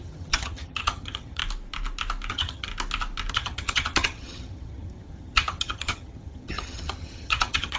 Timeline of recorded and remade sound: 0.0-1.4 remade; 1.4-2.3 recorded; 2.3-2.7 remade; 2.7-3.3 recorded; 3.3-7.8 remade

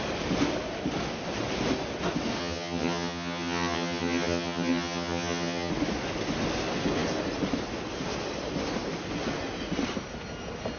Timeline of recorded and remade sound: 0.0-2.4 recorded; 2.4-5.7 remade; 5.7-10.8 recorded

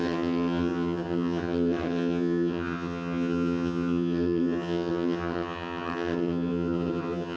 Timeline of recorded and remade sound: 0.0-7.4 remade

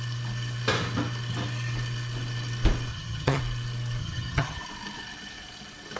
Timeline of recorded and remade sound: 0.0-2.9 recorded; 2.9-3.4 remade; 3.4-4.0 recorded; 4.0-4.6 remade; 4.6-6.0 recorded

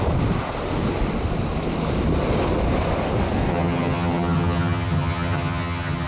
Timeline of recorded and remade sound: 0.0-3.5 recorded; 3.5-6.1 remade